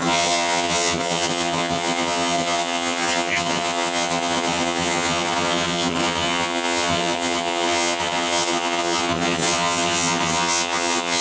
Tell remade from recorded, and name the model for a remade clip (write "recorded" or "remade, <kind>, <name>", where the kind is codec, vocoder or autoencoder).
remade, vocoder, HiFi-GAN